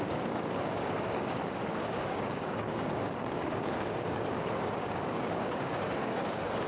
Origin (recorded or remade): remade